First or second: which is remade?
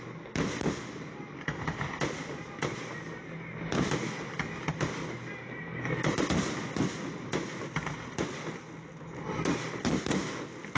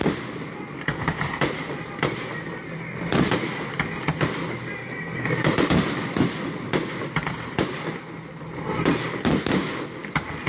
second